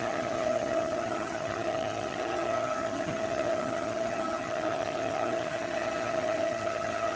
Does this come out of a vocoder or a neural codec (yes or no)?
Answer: yes